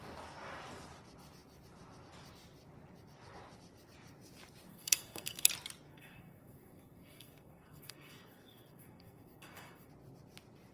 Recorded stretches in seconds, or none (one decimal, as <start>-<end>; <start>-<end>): 0.0-4.7; 5.5-5.9; 9.9-10.7